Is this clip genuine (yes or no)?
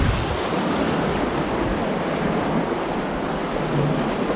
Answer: yes